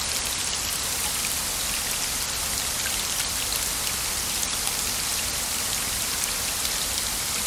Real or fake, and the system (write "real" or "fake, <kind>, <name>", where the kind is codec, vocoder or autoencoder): real